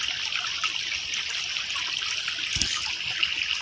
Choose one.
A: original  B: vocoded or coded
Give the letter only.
A